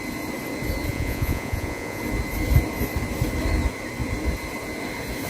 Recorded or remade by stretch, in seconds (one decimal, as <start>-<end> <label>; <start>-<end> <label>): 0.0-0.9 recorded; 0.9-2.0 remade; 2.0-5.3 recorded